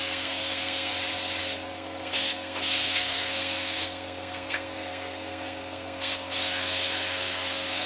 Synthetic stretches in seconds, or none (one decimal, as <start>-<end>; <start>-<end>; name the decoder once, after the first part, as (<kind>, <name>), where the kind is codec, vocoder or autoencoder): 0.0-0.9 (codec, SNAC); 1.4-7.9

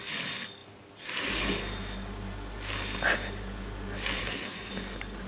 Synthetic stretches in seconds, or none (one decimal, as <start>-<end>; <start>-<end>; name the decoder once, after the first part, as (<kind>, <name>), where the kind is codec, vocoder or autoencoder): 4.2-4.7 (codec, SNAC)

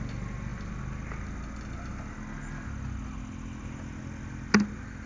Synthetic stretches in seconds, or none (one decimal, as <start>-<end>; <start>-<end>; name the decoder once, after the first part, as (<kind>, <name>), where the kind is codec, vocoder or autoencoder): none

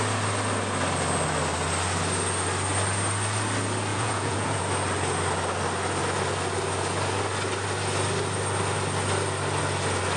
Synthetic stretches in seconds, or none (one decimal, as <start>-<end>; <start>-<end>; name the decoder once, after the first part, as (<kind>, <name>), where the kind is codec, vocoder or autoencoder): 3.9-4.6 (vocoder, Vocos)